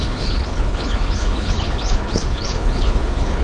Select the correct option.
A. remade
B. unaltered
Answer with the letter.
A